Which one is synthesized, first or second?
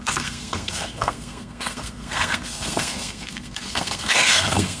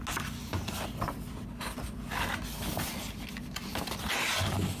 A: first